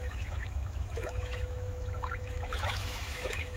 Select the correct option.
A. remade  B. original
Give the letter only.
A